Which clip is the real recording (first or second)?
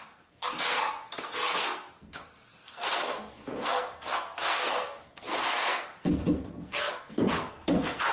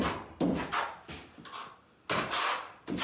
second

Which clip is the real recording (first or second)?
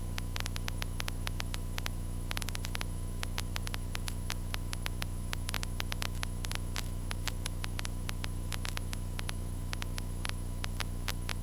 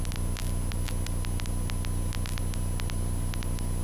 second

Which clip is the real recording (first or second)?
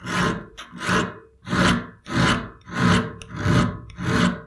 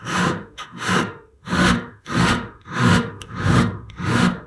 first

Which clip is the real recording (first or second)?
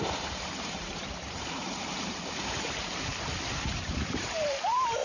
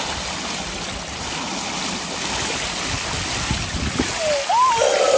second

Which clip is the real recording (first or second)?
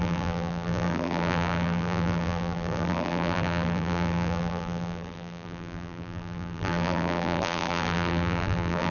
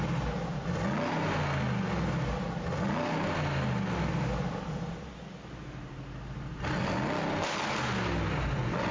second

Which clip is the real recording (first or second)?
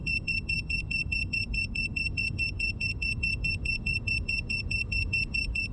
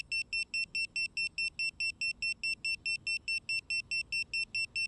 second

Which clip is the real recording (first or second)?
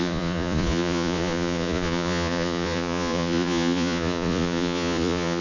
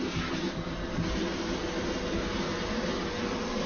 second